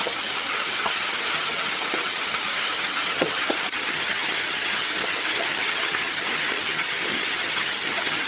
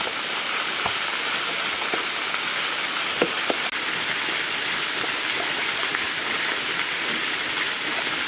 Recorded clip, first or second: second